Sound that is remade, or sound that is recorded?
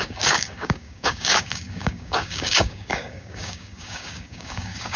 remade